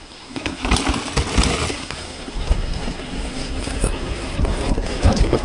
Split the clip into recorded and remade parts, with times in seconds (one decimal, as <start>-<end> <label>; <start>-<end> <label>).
0.0-0.6 remade; 0.6-1.7 recorded; 1.7-5.4 remade

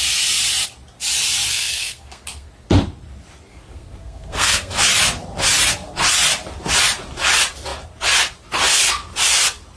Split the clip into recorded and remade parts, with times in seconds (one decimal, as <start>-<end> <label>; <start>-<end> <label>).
0.0-1.5 recorded; 1.5-2.5 remade; 2.5-3.5 recorded; 3.5-4.7 remade; 4.7-9.8 recorded

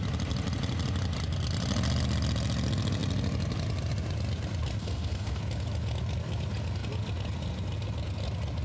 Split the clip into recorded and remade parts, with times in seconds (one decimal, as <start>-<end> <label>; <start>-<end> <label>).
0.0-4.8 recorded; 4.8-5.4 remade; 5.4-8.6 recorded

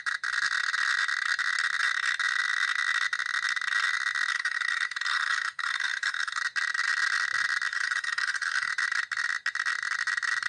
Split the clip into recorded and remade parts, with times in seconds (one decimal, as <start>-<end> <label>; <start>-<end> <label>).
0.0-4.3 recorded; 4.3-6.4 remade; 6.4-7.7 recorded; 7.7-8.7 remade; 8.7-10.5 recorded

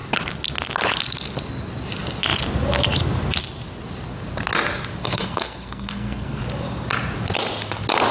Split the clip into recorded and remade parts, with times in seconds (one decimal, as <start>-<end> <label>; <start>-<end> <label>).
0.0-5.0 recorded; 5.0-6.4 remade; 6.4-8.1 recorded

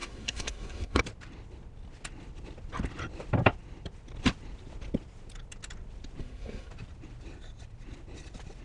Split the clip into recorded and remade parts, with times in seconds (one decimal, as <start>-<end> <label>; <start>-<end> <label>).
0.0-1.0 remade; 1.0-6.2 recorded; 6.2-6.7 remade; 6.7-8.6 recorded

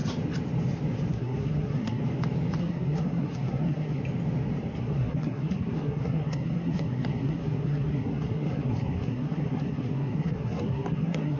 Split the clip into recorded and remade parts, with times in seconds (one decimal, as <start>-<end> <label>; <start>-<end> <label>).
0.0-1.1 recorded; 1.1-2.0 remade; 2.0-2.6 recorded; 2.6-4.0 remade; 4.0-4.8 recorded; 4.8-11.4 remade

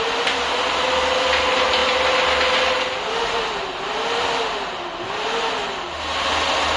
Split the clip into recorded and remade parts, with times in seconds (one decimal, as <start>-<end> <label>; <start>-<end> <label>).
0.0-6.8 recorded